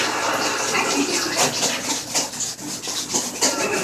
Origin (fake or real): real